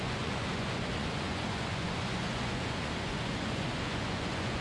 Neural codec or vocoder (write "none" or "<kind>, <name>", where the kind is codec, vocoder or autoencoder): vocoder, Vocos